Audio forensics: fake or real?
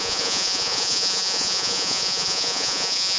fake